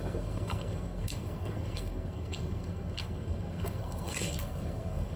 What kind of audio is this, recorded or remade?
remade